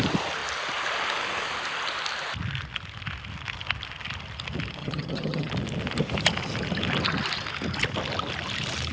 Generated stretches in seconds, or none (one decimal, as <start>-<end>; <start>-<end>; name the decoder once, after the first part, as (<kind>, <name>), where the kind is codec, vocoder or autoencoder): 4.8-5.5 (vocoder, HiFi-GAN)